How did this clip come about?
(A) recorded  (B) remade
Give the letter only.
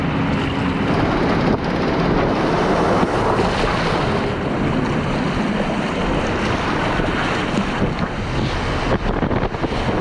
A